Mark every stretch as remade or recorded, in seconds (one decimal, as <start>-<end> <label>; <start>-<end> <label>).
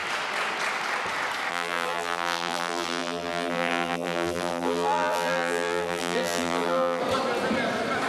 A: 0.0-1.5 recorded; 1.5-7.0 remade; 7.0-8.1 recorded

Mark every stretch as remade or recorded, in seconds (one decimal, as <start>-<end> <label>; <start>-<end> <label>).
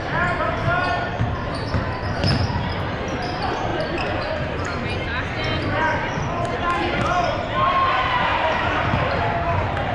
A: 0.0-8.3 recorded; 8.3-9.2 remade; 9.2-9.9 recorded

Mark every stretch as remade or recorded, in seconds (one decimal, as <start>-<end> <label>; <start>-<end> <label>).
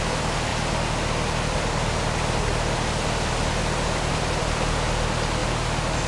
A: 0.0-0.5 remade; 0.5-4.1 recorded; 4.1-5.4 remade; 5.4-6.1 recorded